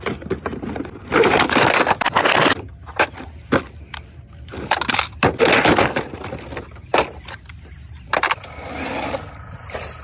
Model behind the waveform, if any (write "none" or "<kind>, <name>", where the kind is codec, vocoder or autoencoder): none